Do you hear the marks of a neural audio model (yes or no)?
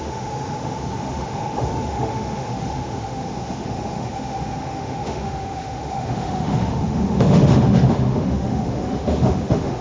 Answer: yes